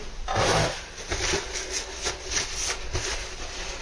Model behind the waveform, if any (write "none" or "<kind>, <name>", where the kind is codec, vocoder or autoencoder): none